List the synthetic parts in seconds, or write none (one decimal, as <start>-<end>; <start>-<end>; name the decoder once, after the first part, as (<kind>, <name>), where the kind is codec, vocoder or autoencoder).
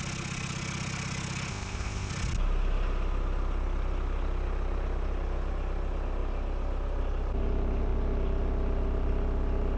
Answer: 1.5-2.1 (codec, ZipCodec)